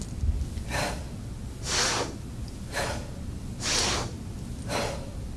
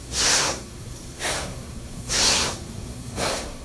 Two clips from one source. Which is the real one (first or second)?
first